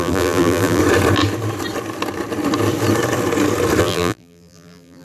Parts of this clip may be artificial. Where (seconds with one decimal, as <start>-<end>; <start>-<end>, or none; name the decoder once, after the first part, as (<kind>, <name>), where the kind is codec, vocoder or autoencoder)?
0.0-0.8 (vocoder, BigVGAN v2); 3.8-5.0